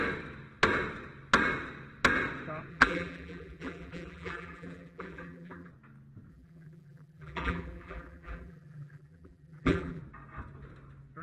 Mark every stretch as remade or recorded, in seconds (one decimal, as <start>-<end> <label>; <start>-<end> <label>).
0.0-2.7 recorded; 2.7-5.7 remade; 5.7-6.3 recorded; 6.3-10.0 remade; 10.0-11.2 recorded